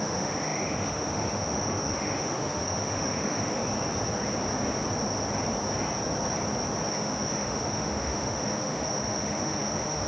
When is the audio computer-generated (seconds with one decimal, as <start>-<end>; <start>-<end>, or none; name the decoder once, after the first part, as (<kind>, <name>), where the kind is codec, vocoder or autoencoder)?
0.0-3.6 (autoencoder, DAC-VAE); 6.9-10.1